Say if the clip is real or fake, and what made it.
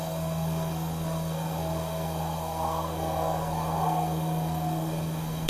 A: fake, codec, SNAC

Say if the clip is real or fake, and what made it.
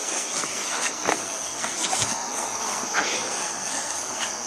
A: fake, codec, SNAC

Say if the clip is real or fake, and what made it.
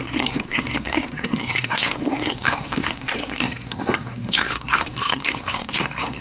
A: fake, codec, SNAC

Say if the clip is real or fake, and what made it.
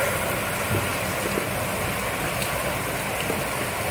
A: real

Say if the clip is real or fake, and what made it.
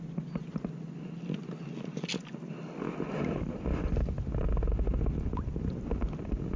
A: real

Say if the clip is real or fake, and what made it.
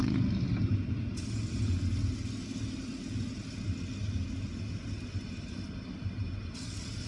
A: real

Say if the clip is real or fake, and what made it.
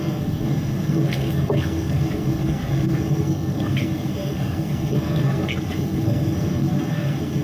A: fake, codec, SNAC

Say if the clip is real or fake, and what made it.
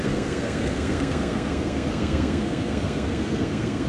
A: fake, codec, SNAC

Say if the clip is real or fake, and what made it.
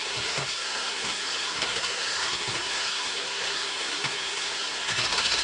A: fake, codec, SNAC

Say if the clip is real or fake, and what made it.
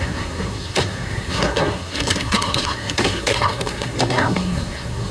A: fake, codec, SNAC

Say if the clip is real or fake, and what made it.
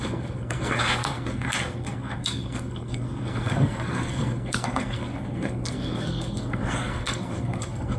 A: fake, codec, SNAC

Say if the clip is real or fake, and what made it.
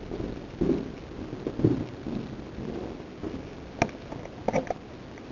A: real